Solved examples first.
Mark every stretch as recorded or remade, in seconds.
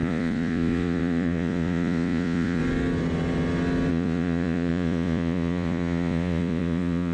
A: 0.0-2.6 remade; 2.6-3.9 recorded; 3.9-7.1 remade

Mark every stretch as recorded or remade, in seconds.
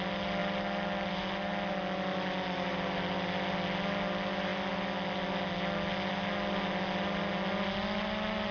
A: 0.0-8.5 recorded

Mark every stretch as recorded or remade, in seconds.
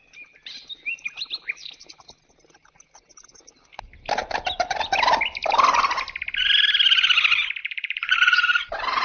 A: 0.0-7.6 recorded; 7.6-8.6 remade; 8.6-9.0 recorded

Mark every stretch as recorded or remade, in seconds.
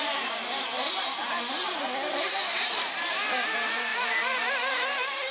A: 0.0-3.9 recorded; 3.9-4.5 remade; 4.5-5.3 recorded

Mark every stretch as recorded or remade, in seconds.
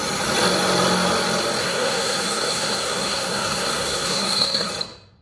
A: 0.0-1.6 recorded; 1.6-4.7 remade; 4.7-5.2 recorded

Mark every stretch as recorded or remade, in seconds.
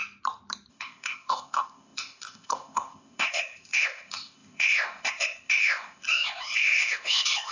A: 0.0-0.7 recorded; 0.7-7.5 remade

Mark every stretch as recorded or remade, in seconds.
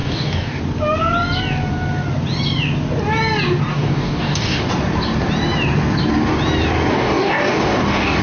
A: 0.0-0.6 remade; 0.6-3.7 recorded; 3.7-4.7 remade; 4.7-6.9 recorded; 6.9-8.2 remade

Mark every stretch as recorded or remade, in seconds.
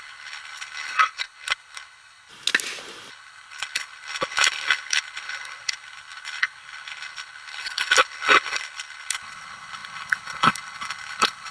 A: 0.0-2.3 remade; 2.3-3.1 recorded; 3.1-11.5 remade